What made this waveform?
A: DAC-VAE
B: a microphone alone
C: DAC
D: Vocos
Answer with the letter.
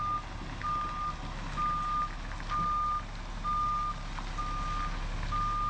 B